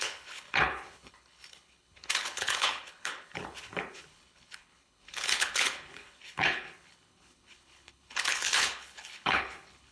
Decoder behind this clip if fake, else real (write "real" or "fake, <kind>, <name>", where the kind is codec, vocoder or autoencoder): fake, codec, HILCodec